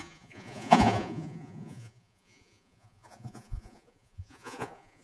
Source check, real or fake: fake